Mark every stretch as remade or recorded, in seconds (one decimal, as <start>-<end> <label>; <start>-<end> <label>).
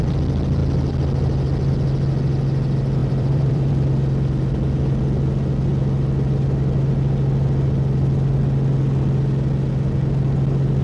0.0-3.0 recorded; 3.0-3.7 remade; 3.7-10.8 recorded